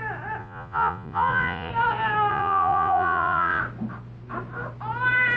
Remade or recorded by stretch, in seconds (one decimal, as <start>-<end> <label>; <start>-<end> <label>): 0.0-0.4 recorded; 0.4-1.7 remade; 1.7-2.3 recorded; 2.3-3.6 remade; 3.6-5.4 recorded